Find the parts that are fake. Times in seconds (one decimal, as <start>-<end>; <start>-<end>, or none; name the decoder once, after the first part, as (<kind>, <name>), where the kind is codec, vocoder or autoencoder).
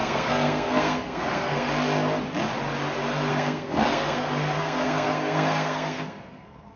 0.0-1.7 (codec, SNAC); 3.3-6.8